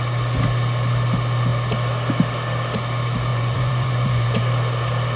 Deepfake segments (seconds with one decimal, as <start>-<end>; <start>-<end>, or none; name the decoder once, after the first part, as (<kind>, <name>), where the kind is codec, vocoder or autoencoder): 3.3-4.4 (vocoder, Vocos)